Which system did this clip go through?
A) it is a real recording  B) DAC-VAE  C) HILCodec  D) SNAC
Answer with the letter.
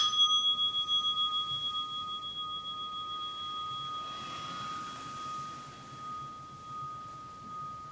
A